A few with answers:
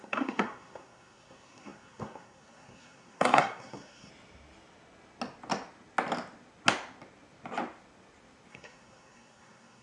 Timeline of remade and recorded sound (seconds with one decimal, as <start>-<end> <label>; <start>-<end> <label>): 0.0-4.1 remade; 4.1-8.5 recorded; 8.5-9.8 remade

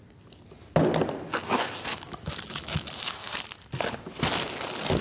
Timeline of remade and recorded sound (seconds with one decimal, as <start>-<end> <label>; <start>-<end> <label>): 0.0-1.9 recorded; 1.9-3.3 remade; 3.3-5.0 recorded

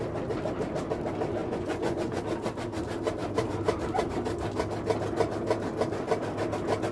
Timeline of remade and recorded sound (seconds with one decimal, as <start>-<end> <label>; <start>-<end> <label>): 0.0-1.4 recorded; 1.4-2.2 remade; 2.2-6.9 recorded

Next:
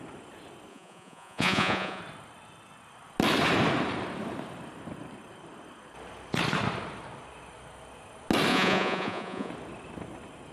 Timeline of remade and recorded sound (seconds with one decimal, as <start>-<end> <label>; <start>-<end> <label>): 0.0-0.7 recorded; 0.7-2.0 remade; 2.0-8.5 recorded; 8.5-9.5 remade; 9.5-10.5 recorded